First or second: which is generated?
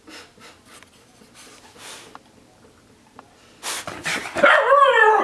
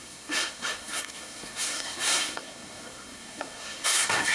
second